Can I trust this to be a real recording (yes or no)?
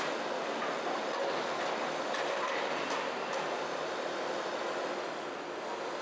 yes